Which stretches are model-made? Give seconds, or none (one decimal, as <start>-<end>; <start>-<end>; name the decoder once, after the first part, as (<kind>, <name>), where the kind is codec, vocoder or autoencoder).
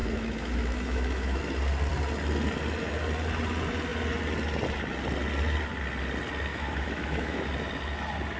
0.0-1.4 (autoencoder, DAC-VAE); 6.5-7.5